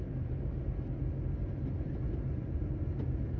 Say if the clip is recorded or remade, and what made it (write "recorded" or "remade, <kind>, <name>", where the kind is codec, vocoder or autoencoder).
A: recorded